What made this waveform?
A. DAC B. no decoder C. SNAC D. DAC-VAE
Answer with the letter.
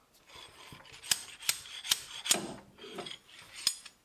B